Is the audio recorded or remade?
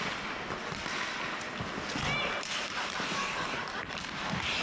recorded